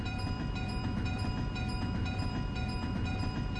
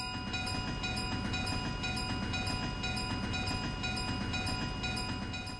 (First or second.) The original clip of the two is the second